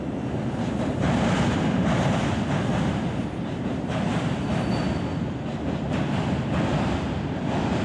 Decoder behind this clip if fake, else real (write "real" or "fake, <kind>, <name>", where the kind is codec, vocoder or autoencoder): real